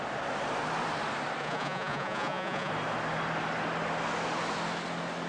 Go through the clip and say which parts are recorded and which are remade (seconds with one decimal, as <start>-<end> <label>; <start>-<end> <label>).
0.0-1.4 recorded; 1.4-2.7 remade; 2.7-5.3 recorded